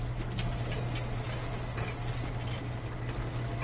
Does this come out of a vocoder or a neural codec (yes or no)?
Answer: no